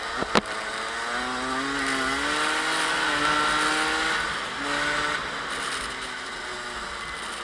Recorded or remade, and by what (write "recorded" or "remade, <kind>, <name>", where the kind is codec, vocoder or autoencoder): recorded